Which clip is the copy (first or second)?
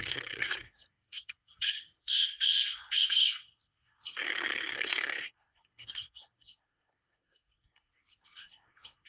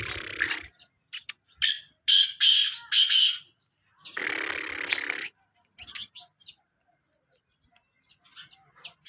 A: first